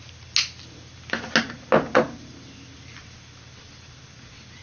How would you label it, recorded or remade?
recorded